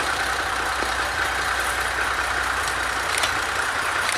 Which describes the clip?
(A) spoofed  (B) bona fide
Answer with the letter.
A